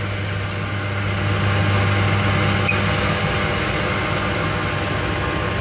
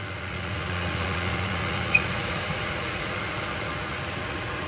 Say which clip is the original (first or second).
first